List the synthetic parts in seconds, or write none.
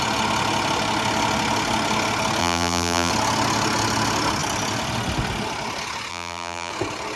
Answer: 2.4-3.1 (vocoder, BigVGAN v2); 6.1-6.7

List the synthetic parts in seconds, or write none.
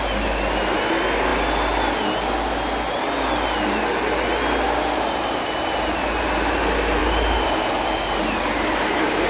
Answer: 7.0-9.3 (vocoder, BigVGAN v2)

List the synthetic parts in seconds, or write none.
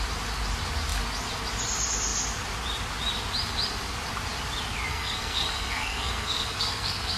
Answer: 4.9-7.2 (codec, SNAC)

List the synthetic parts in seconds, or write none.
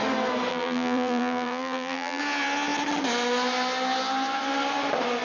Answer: 0.5-2.2 (vocoder, BigVGAN v2)